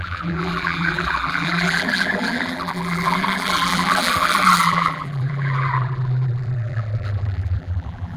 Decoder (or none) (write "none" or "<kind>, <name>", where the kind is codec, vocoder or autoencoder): vocoder, BigVGAN v2